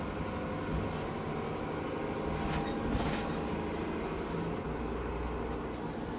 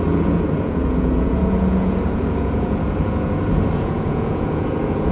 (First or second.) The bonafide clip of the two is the first